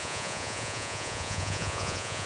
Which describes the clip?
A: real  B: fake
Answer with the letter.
B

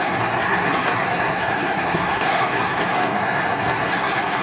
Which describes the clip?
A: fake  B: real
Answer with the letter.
A